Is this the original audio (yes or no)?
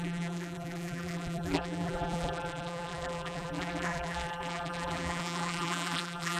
no